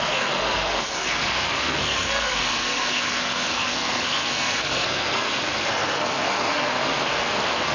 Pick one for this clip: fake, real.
fake